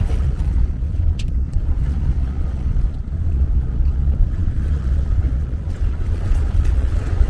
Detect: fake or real fake